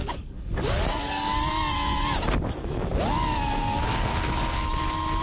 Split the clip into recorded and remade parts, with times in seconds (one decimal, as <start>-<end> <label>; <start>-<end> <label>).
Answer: 0.0-1.5 remade; 1.5-3.6 recorded; 3.6-4.6 remade; 4.6-5.2 recorded